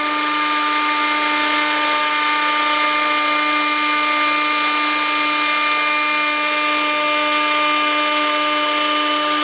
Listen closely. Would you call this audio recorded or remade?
recorded